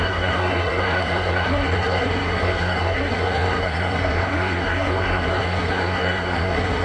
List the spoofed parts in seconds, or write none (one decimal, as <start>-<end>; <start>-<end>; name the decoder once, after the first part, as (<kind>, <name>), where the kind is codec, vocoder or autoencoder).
0.0-6.8 (codec, SNAC)